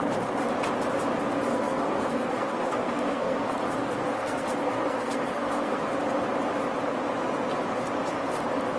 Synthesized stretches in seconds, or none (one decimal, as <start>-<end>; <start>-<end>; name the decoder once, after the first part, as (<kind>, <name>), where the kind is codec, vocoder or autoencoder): 1.5-5.8 (codec, SNAC)

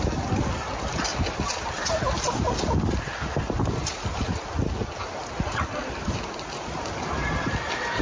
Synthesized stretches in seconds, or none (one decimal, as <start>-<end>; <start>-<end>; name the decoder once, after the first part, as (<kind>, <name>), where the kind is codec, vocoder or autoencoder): 0.0-1.1 (vocoder, BigVGAN v2); 5.9-8.0

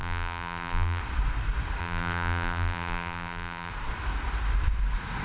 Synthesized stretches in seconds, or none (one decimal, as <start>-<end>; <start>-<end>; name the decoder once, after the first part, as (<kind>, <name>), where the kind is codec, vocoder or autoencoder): 0.0-1.0 (vocoder, BigVGAN v2); 1.8-3.7

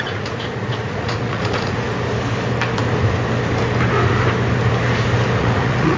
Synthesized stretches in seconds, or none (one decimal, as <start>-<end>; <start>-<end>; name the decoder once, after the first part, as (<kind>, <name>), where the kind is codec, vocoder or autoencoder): 0.0-1.8 (vocoder, Vocos); 5.4-6.0

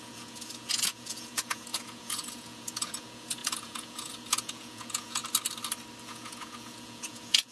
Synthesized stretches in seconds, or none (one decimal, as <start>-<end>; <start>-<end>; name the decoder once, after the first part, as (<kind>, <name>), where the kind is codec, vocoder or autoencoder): 0.0-5.2 (vocoder, Vocos); 6.0-7.5

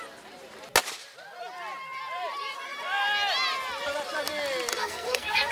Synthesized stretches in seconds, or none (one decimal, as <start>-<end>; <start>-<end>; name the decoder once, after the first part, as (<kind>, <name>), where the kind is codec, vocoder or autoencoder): 4.7-5.5 (codec, SNAC)

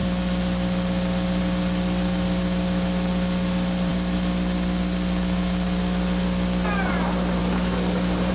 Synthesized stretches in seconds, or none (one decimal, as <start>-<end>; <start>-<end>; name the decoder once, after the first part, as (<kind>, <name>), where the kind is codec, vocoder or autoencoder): 7.4-8.3 (codec, DAC)

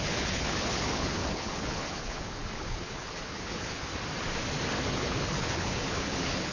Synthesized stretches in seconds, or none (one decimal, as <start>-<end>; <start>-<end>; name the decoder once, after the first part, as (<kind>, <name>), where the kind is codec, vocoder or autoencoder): 0.0-3.9 (codec, HILCodec); 4.9-6.5